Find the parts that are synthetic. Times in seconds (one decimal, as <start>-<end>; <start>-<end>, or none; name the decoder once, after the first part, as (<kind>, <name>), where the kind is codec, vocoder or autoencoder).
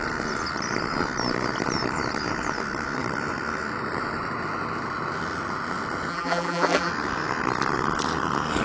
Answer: 6.1-6.9 (vocoder, BigVGAN v2)